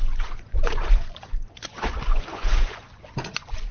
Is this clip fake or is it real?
fake